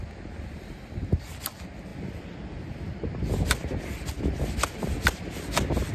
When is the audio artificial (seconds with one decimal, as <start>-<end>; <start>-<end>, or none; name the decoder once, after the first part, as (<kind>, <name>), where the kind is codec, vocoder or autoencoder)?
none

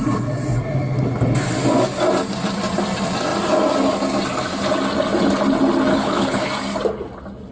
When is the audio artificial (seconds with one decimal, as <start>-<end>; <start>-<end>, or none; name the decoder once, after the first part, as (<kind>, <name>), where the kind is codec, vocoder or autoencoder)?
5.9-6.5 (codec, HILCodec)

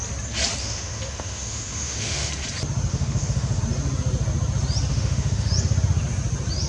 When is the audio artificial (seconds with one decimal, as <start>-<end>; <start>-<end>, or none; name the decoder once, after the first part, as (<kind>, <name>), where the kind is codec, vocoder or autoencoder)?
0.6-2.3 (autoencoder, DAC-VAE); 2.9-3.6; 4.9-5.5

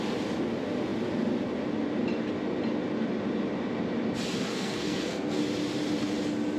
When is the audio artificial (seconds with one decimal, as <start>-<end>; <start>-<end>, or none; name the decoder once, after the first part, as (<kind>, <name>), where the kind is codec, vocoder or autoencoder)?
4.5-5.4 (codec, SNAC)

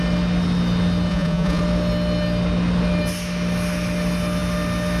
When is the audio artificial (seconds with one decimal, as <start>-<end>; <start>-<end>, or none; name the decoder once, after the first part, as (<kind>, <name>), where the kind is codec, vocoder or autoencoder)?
1.1-1.6 (vocoder, Vocos)

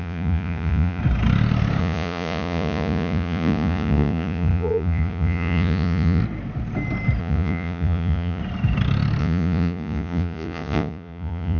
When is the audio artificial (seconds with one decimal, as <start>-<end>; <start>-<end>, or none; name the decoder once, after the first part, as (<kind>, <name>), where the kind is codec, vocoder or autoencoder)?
0.0-1.0 (vocoder, Vocos); 1.8-6.2; 7.2-8.4; 9.2-11.6

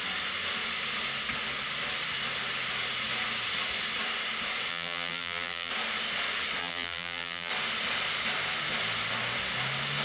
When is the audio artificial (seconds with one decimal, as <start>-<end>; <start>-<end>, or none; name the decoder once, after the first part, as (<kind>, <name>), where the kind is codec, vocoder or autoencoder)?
4.7-5.7 (vocoder, BigVGAN v2); 6.6-7.5

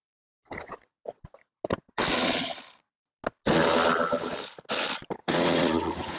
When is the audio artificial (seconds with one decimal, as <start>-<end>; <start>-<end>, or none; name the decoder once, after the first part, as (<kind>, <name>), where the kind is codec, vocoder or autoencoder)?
5.2-6.2 (vocoder, Vocos)